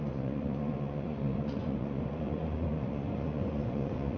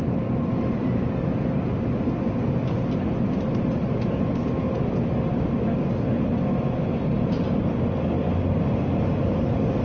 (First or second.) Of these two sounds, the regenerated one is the first